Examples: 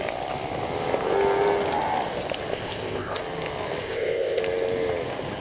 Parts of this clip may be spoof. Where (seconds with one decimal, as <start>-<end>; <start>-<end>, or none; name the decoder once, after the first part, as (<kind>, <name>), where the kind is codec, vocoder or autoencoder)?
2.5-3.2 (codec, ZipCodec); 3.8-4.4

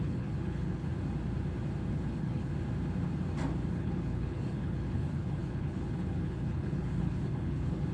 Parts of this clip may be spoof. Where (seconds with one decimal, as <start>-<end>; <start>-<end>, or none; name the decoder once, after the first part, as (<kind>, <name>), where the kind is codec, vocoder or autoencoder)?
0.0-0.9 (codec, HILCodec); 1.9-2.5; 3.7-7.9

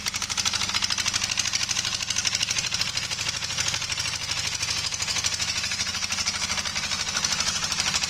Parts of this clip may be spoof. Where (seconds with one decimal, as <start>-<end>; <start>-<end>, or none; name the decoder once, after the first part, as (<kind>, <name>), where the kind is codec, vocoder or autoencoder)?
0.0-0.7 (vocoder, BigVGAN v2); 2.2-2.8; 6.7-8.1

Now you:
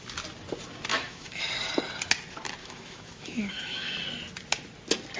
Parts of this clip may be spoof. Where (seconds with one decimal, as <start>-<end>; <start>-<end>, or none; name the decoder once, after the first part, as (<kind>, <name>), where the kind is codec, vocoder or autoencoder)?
0.9-1.4 (autoencoder, DAC-VAE); 2.6-3.9